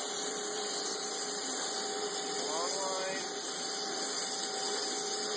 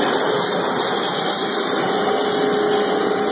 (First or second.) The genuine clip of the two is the second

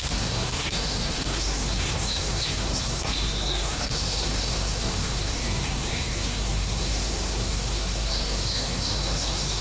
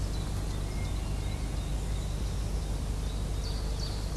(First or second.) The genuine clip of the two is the second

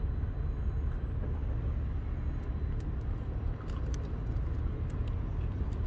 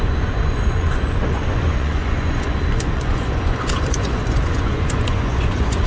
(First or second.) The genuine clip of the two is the first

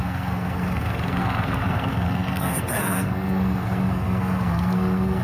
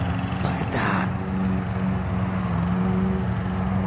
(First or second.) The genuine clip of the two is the second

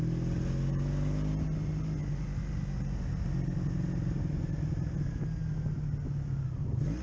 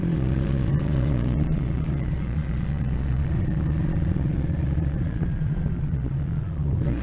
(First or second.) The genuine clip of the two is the first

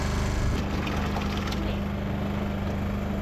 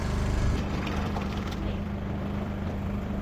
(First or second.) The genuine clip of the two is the first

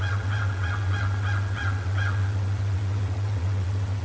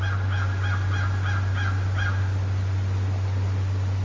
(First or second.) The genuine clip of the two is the second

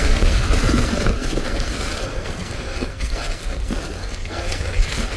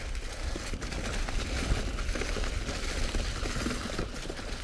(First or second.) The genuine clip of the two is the second